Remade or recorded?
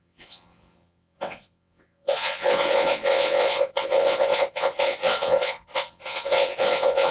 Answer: remade